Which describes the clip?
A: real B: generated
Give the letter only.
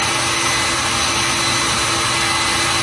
A